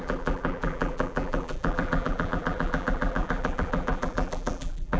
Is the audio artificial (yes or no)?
yes